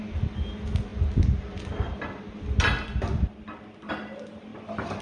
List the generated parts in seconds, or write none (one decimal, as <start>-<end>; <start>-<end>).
none